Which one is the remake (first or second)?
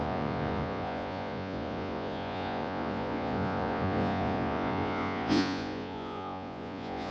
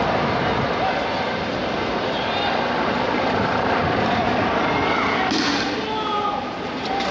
first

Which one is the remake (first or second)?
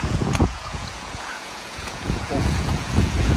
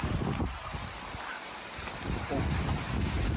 first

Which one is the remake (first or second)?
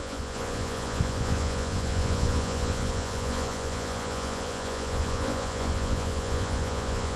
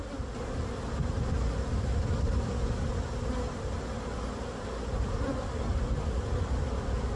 first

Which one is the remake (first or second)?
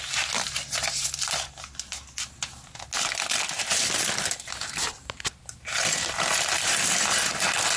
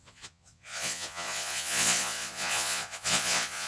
second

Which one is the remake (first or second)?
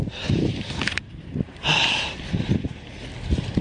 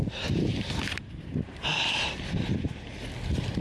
first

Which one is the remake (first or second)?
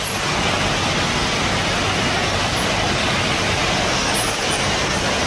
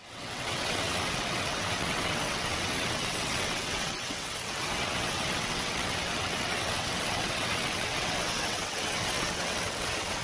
second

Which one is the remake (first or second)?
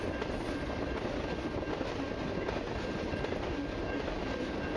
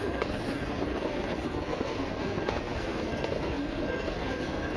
second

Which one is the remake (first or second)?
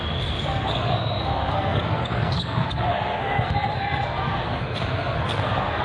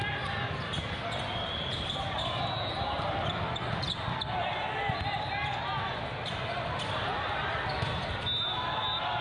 first